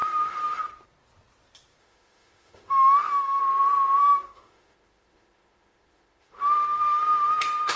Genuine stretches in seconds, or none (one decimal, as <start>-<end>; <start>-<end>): 0.6-1.8; 3.4-4.0